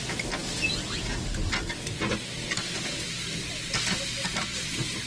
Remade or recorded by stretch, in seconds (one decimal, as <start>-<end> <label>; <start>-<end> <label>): 0.0-5.1 recorded